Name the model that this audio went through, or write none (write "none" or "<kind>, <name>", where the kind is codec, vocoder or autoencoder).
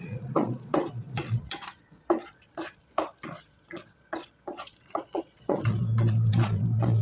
vocoder, Vocos